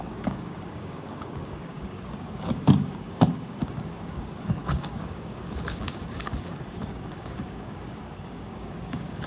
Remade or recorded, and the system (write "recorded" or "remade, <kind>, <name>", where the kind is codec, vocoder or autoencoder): remade, codec, DAC